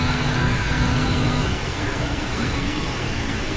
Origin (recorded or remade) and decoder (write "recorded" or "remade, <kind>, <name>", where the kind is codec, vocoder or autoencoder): remade, codec, SNAC